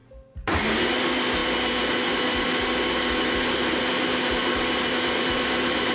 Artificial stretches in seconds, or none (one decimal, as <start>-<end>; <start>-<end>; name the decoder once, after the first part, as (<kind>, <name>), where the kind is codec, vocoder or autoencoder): none